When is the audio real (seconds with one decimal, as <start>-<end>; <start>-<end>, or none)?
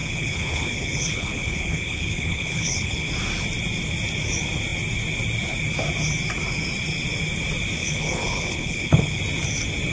3.1-7.8; 9.2-9.9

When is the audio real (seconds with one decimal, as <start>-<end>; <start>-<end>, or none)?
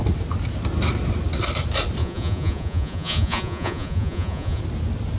0.0-2.0; 4.6-5.2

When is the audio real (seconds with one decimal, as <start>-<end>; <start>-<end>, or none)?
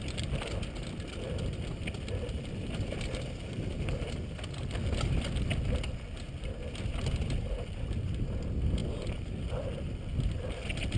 0.0-11.0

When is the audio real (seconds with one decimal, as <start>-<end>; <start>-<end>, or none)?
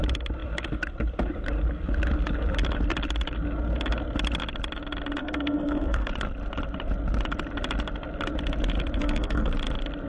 0.0-5.2; 6.1-9.0; 9.5-10.1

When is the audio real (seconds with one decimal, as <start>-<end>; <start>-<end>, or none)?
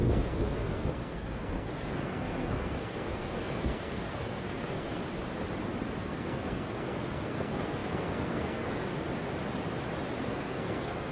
5.0-6.0; 8.9-10.2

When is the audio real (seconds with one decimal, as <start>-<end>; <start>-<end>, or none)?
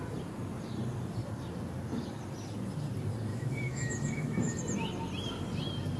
0.0-3.3; 4.6-6.0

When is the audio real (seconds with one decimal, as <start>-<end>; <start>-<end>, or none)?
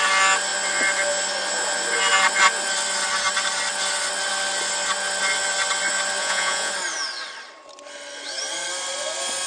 0.0-6.2; 6.7-9.5